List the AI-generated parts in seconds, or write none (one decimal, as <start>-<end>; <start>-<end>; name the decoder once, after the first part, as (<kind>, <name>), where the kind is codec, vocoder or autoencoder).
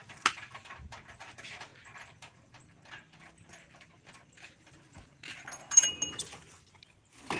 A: none